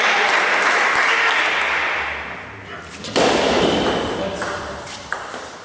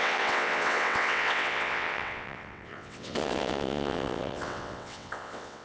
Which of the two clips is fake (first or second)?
second